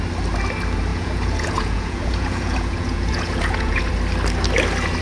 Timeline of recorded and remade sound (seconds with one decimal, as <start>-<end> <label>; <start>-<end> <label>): 0.0-0.9 recorded; 0.9-3.9 remade; 3.9-5.0 recorded